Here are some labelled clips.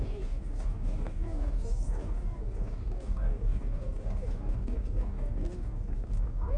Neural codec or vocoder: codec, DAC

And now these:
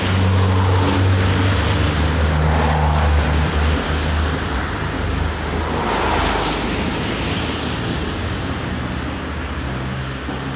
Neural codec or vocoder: none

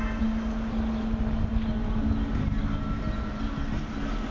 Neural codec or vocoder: none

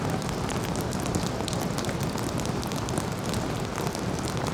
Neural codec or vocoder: none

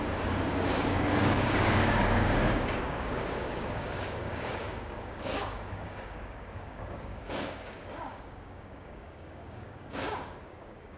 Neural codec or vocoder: codec, DAC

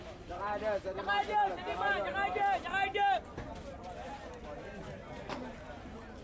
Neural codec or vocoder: none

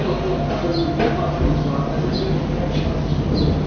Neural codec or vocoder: none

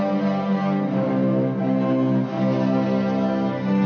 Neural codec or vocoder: none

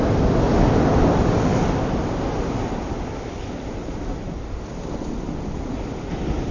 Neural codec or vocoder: none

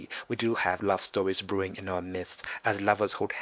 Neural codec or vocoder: codec, DAC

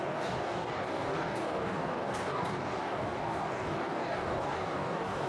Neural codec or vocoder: codec, DAC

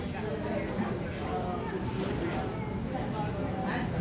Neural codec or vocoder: none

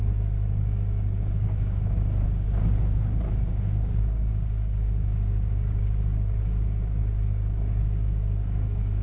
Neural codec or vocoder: codec, DAC